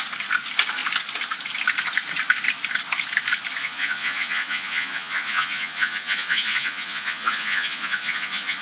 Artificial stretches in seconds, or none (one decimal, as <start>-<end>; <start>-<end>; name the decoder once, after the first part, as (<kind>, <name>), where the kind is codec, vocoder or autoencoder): 3.6-8.6 (vocoder, Vocos)